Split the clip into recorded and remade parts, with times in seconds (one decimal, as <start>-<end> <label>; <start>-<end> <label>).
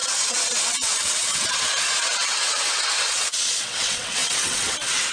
0.0-5.1 remade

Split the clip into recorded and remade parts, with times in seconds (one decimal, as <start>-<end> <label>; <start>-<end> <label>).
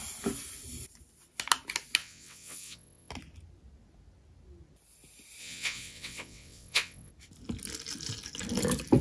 0.0-2.0 recorded; 2.0-3.1 remade; 3.1-5.4 recorded; 5.4-7.1 remade; 7.1-9.0 recorded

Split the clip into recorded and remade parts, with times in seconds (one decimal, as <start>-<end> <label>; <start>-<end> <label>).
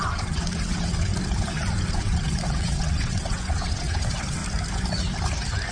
0.0-1.1 remade; 1.1-1.9 recorded; 1.9-4.4 remade; 4.4-5.7 recorded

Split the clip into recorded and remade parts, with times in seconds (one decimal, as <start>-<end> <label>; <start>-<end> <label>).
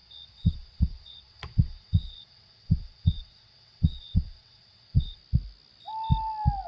0.0-5.2 remade; 5.2-6.7 recorded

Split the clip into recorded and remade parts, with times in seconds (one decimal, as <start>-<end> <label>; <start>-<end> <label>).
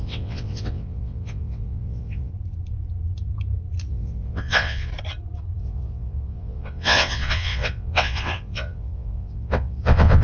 0.0-2.3 remade; 2.3-3.9 recorded; 3.9-4.9 remade; 4.9-5.6 recorded; 5.6-10.2 remade